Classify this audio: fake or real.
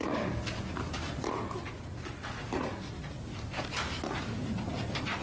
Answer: real